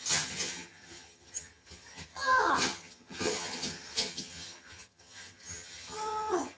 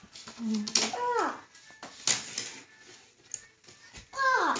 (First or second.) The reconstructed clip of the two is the first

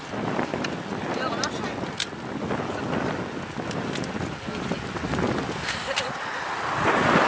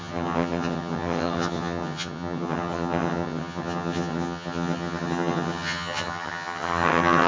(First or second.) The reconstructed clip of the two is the second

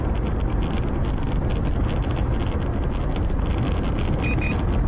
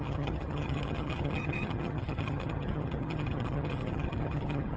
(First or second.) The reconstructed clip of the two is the second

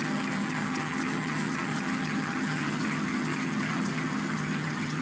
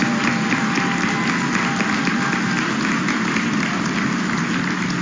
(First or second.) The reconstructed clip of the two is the first